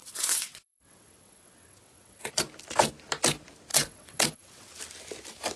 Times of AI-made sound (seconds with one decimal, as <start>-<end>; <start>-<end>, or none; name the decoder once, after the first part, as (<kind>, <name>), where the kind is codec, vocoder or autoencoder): 0.0-2.3 (vocoder, WaveNeXt); 3.7-4.7